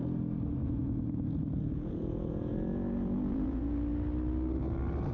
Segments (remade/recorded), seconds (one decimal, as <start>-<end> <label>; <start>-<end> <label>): 0.0-0.6 recorded; 0.6-3.7 remade; 3.7-5.1 recorded